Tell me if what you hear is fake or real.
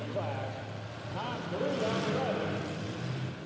real